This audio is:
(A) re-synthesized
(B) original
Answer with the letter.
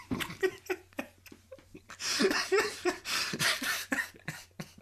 A